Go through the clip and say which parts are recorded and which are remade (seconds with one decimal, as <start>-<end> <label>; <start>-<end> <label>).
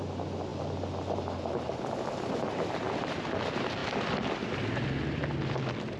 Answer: 0.0-6.0 recorded